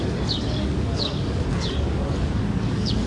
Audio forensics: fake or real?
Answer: fake